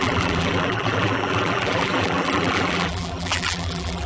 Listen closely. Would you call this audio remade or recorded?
remade